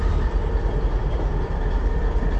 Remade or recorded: remade